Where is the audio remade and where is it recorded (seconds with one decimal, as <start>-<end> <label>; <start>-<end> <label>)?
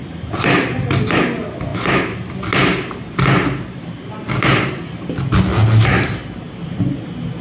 0.0-1.2 remade; 1.2-7.4 recorded